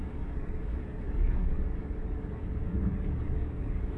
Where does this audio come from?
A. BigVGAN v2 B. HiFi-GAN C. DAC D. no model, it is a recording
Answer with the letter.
C